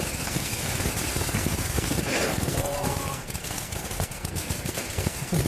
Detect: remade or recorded remade